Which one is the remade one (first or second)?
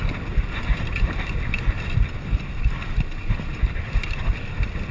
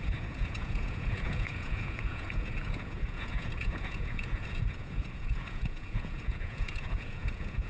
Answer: second